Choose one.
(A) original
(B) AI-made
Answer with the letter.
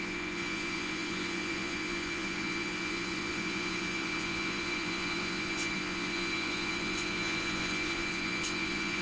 B